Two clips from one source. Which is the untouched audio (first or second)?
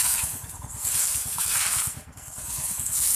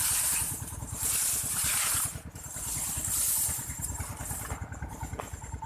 second